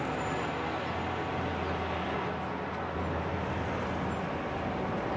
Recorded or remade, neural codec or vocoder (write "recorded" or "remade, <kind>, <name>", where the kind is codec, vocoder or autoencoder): recorded